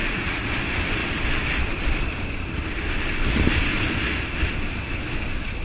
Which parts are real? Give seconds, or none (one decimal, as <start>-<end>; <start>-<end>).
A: 0.5-5.6